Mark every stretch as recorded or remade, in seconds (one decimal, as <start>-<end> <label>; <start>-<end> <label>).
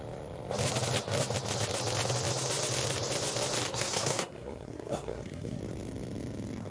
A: 0.0-3.7 recorded; 3.7-5.6 remade; 5.6-6.7 recorded